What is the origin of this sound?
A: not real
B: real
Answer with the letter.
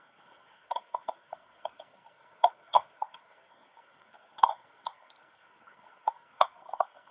A